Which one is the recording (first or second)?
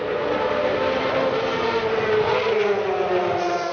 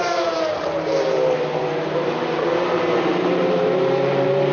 first